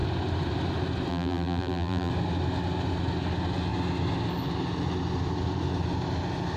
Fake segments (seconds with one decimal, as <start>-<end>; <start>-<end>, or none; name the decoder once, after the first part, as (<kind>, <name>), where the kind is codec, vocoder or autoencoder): 1.1-2.1 (vocoder, BigVGAN v2)